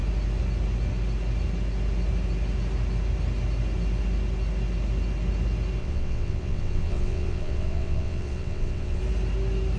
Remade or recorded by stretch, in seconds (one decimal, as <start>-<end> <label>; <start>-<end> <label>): 0.0-5.8 recorded; 5.8-9.0 remade; 9.0-9.8 recorded